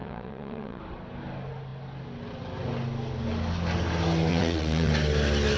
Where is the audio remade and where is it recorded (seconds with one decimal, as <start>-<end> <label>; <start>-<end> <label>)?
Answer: 0.0-0.8 remade; 0.8-4.3 recorded; 4.3-4.9 remade; 4.9-5.6 recorded